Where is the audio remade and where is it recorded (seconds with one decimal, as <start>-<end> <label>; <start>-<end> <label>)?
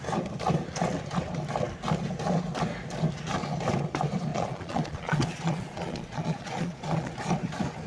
0.0-4.3 recorded; 4.3-7.1 remade; 7.1-7.9 recorded